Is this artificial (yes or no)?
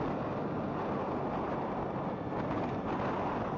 no